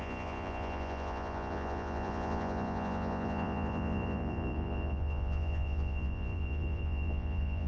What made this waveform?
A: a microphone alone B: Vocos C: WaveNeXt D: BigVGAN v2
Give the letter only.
B